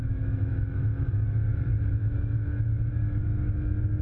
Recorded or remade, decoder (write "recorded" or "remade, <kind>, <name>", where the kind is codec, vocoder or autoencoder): remade, autoencoder, DAC-VAE